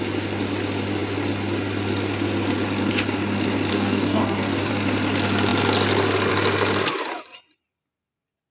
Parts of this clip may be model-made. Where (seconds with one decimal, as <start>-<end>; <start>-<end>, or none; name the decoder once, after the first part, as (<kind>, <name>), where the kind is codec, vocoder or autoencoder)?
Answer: 3.7-4.7 (codec, DAC)